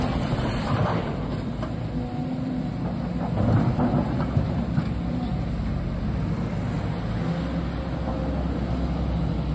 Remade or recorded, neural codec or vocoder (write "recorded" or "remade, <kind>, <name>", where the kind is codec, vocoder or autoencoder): recorded